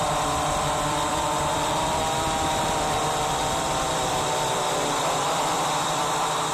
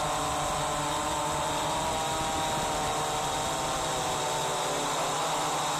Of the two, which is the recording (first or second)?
second